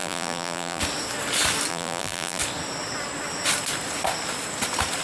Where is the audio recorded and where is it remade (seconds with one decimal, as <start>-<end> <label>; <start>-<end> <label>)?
0.0-0.8 remade; 0.8-1.7 recorded; 1.7-2.4 remade; 2.4-5.0 recorded

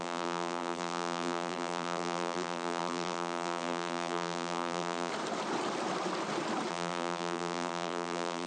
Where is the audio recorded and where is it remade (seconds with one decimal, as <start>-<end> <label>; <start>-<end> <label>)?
0.0-5.1 remade; 5.1-6.7 recorded; 6.7-8.5 remade

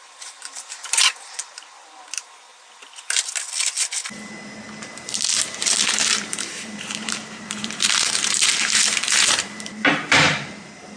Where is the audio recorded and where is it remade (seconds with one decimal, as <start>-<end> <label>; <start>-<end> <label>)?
0.0-2.5 remade; 2.5-5.4 recorded; 5.4-11.0 remade

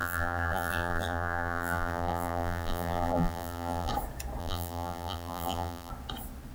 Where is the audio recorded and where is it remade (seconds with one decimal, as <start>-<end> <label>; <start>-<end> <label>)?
0.0-3.9 remade; 3.9-4.4 recorded; 4.4-5.9 remade; 5.9-6.5 recorded

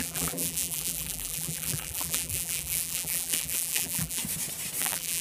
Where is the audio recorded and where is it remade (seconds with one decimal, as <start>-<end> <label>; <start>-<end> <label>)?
0.0-4.2 remade; 4.2-4.8 recorded; 4.8-5.2 remade

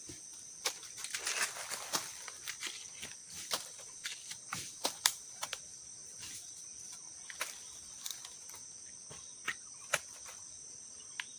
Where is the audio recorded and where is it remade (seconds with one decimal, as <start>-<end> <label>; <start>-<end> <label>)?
0.0-3.2 recorded; 3.2-5.6 remade; 5.6-6.0 recorded; 6.0-6.5 remade; 6.5-11.4 recorded

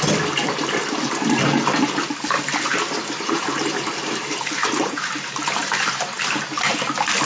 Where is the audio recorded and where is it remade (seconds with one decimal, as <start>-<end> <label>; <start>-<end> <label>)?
0.0-2.7 recorded; 2.7-6.4 remade; 6.4-7.3 recorded

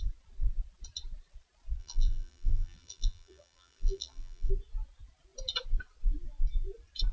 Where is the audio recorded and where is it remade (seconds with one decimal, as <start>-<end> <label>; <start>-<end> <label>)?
0.0-1.8 recorded; 1.8-4.5 remade; 4.5-7.1 recorded